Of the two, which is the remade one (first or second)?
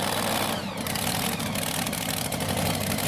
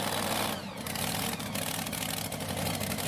first